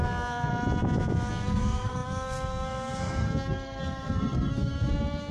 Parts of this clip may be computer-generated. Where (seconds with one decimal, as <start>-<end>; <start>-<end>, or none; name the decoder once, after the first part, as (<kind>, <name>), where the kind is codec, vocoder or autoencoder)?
0.0-0.5 (codec, SNAC); 1.3-5.3